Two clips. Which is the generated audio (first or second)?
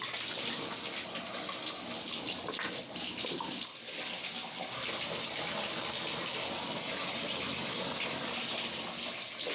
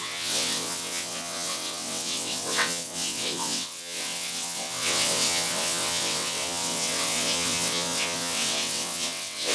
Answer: second